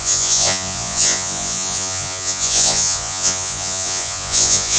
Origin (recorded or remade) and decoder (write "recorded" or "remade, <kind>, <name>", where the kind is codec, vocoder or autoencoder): remade, vocoder, Vocos